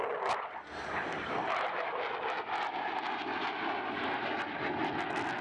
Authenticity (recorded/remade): recorded